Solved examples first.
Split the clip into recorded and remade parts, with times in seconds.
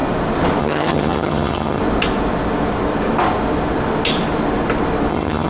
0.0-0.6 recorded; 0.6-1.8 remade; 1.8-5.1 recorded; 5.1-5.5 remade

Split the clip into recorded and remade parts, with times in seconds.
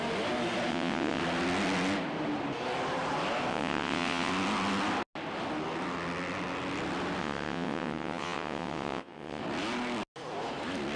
0.0-0.7 recorded; 0.7-1.2 remade; 1.2-3.5 recorded; 3.5-4.3 remade; 4.3-7.2 recorded; 7.2-9.4 remade; 9.4-11.0 recorded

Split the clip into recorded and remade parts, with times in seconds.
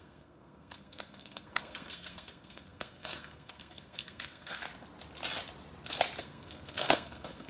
0.0-4.6 remade; 4.6-6.2 recorded; 6.2-7.5 remade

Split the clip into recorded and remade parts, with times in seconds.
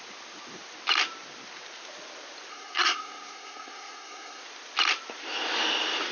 0.0-2.5 recorded; 2.5-4.4 remade; 4.4-6.1 recorded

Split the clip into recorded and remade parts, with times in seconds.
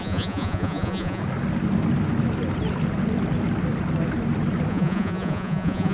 0.0-1.2 remade; 1.2-4.7 recorded; 4.7-5.9 remade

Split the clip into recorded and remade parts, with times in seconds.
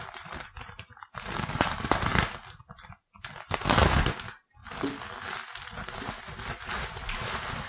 0.0-7.7 recorded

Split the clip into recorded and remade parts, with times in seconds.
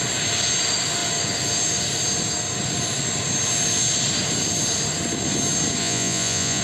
0.0-5.8 recorded; 5.8-6.6 remade